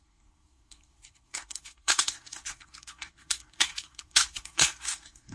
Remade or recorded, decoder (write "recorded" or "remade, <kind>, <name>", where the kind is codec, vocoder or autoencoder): remade, codec, SNAC